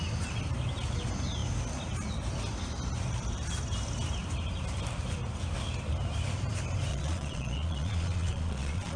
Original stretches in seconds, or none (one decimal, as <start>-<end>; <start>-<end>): 0.0-6.9